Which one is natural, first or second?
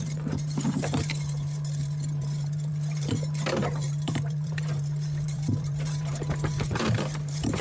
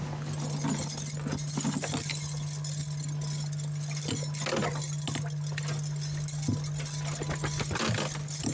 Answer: second